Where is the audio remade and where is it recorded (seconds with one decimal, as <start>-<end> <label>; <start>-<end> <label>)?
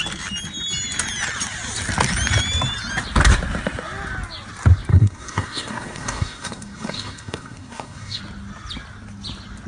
0.0-4.9 recorded; 4.9-8.2 remade; 8.2-9.7 recorded